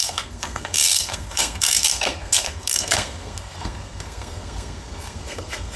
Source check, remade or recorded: remade